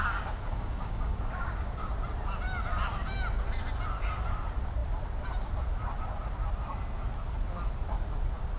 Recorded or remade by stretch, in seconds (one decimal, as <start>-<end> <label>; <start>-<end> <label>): 0.0-0.5 recorded; 0.5-1.9 remade; 1.9-8.6 recorded